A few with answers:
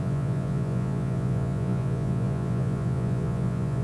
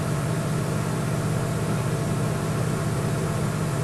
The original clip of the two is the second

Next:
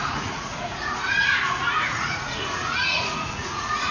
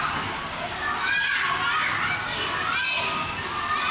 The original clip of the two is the second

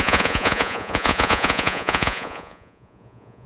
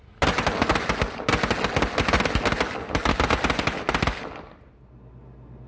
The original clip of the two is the second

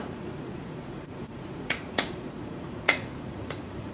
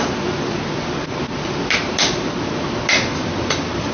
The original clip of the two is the second